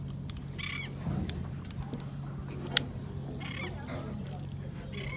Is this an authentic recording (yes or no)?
yes